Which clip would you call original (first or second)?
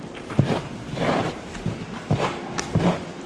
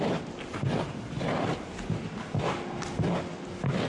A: second